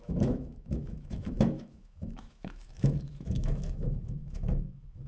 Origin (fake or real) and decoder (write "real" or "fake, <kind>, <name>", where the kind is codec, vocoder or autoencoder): fake, autoencoder, DAC-VAE